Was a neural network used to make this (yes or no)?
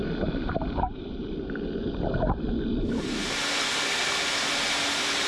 no